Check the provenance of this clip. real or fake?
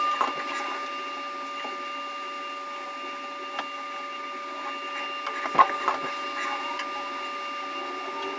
real